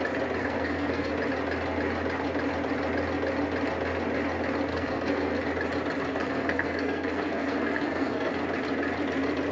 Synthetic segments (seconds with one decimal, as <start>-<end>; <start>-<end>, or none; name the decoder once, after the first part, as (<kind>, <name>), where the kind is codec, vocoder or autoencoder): 0.4-1.1 (codec, SNAC); 4.7-5.4; 6.1-8.3